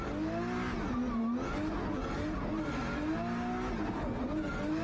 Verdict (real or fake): real